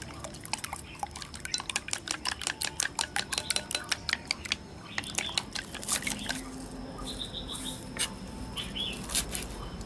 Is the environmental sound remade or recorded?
recorded